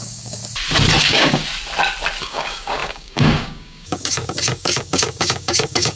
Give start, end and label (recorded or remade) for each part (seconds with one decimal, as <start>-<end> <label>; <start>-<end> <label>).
0.0-0.4 remade; 0.4-1.0 recorded; 1.0-1.4 remade; 1.4-2.2 recorded; 2.2-6.0 remade